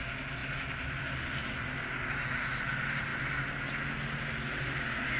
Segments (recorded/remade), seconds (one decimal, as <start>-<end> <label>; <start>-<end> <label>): 0.0-5.2 recorded